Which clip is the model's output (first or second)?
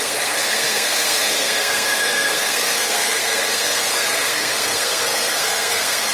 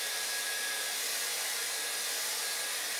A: first